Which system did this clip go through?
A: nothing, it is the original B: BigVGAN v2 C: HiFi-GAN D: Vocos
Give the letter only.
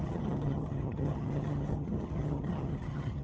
C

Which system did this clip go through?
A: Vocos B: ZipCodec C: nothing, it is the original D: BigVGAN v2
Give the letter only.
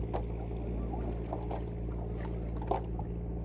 C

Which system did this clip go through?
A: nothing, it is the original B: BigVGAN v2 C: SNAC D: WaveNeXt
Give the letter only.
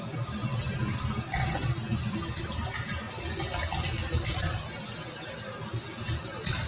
A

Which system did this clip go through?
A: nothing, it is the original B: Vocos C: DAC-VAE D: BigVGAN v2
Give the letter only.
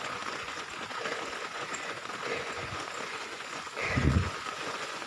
B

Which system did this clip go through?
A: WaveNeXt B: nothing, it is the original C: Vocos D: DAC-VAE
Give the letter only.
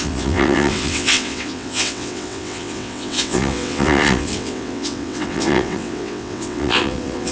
A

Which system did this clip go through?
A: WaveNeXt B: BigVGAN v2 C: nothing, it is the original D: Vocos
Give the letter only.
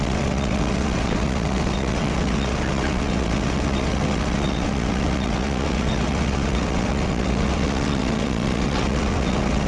A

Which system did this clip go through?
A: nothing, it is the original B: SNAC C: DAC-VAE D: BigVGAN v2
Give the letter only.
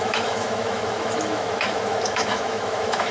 C